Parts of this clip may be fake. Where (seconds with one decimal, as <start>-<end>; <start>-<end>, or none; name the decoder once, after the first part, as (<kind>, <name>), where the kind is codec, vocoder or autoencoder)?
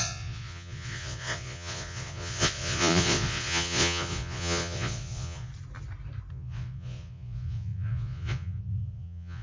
0.0-5.5 (vocoder, Vocos); 6.3-9.4